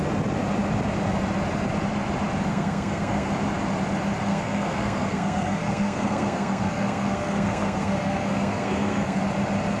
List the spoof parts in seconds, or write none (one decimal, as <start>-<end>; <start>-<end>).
2.5-3.3; 4.3-9.2